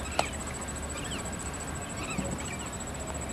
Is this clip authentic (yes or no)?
yes